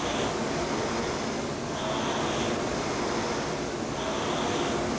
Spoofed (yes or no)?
no